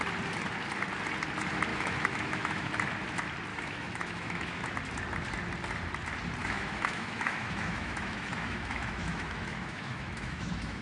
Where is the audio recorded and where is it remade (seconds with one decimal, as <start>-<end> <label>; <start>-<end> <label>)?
0.0-1.7 recorded; 1.7-2.7 remade; 2.7-3.5 recorded; 3.5-4.7 remade; 4.7-6.4 recorded; 6.4-10.8 remade